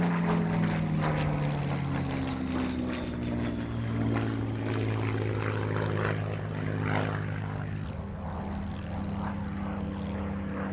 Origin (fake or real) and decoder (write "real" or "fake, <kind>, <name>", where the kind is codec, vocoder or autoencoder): real